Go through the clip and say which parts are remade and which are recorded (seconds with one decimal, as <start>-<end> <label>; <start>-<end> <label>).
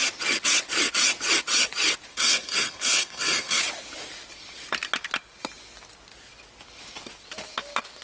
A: 0.0-2.1 recorded; 2.1-3.6 remade; 3.6-8.0 recorded